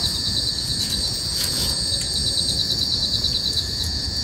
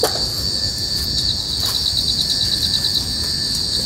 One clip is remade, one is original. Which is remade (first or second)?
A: first